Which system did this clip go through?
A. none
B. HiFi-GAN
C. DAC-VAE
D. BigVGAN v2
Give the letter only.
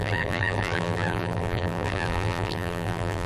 D